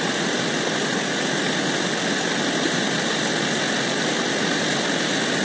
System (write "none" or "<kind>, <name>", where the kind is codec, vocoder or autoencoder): none